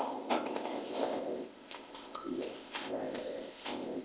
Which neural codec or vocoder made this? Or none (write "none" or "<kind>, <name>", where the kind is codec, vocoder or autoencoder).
codec, ZipCodec